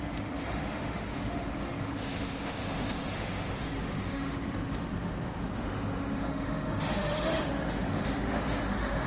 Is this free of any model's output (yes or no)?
no